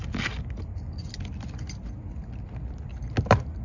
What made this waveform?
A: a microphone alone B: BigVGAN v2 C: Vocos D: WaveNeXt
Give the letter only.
A